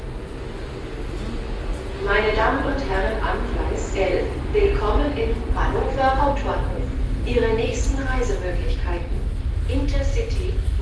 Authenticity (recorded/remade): recorded